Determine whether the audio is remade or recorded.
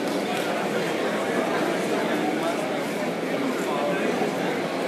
recorded